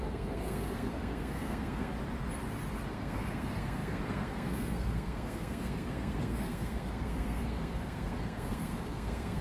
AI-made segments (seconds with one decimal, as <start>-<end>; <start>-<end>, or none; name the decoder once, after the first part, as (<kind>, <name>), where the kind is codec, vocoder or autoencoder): 0.0-1.9 (codec, SNAC); 2.9-9.4